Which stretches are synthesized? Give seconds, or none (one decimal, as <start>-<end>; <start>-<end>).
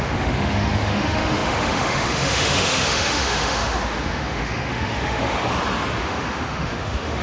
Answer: 0.0-5.4; 6.0-7.2